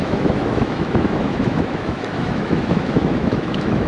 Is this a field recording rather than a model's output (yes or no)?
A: no